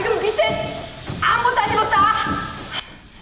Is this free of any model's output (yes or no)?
yes